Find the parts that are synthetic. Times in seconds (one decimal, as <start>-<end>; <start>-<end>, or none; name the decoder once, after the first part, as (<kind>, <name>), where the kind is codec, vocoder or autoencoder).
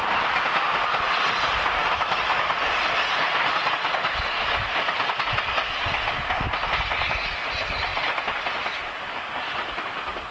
none